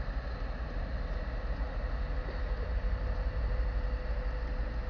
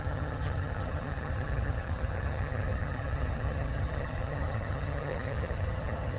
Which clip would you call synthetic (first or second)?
second